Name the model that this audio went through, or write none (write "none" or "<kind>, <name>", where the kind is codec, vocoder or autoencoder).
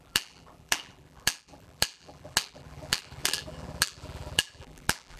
vocoder, BigVGAN v2